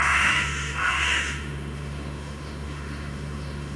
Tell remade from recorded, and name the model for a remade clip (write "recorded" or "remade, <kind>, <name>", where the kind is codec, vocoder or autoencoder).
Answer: remade, autoencoder, DAC-VAE